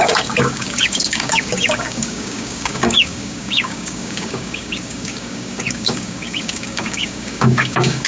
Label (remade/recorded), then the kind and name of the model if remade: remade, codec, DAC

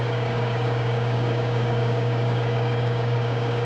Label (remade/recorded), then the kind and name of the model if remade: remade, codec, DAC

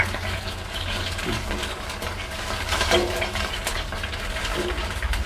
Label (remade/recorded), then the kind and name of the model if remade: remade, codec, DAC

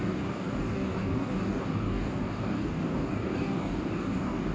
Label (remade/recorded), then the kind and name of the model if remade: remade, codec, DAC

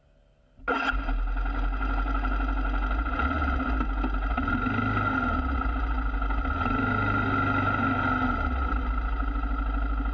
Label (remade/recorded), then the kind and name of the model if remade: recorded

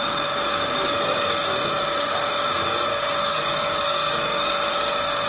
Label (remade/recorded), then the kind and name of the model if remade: remade, codec, DAC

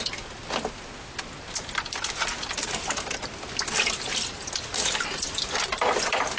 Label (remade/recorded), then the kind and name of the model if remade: recorded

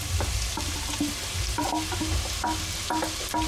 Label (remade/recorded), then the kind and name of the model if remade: recorded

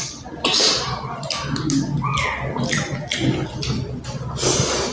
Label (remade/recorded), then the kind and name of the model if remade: recorded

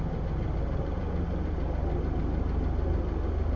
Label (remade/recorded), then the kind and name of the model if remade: recorded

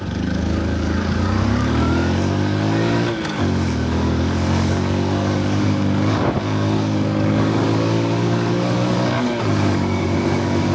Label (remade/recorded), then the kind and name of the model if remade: remade, codec, DAC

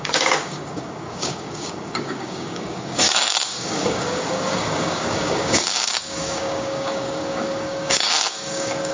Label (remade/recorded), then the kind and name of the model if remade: remade, codec, DAC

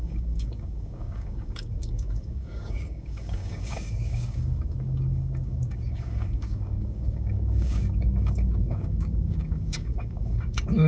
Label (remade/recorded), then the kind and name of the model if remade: remade, codec, DAC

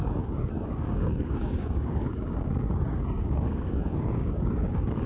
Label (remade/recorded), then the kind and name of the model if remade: remade, codec, DAC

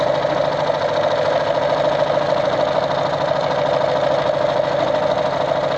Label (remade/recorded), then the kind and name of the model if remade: recorded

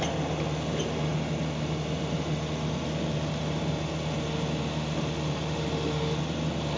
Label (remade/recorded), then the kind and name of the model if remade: recorded